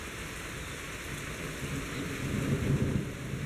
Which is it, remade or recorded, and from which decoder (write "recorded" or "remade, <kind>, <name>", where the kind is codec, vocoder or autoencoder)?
recorded